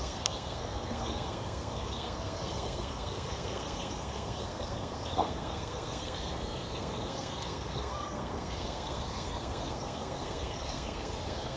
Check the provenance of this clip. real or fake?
fake